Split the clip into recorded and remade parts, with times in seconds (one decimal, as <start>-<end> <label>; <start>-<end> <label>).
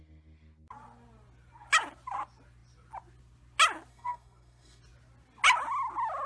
0.0-3.9 recorded; 3.9-4.8 remade; 4.8-6.3 recorded